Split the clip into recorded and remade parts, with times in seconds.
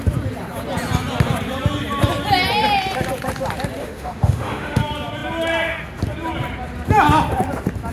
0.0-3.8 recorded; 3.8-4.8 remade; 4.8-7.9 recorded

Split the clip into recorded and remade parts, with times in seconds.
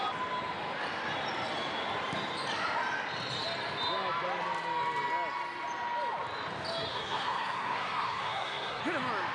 0.0-6.9 recorded; 6.9-8.8 remade; 8.8-9.3 recorded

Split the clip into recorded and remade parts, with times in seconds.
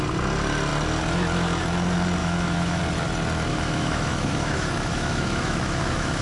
0.0-2.2 recorded; 2.2-2.8 remade; 2.8-3.5 recorded; 3.5-6.2 remade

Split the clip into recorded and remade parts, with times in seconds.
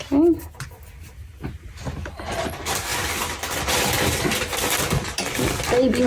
0.0-2.9 recorded; 2.9-4.2 remade; 4.2-6.1 recorded